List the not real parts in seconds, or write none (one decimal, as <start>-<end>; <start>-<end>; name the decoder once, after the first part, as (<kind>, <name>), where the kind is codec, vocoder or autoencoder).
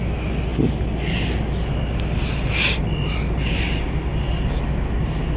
none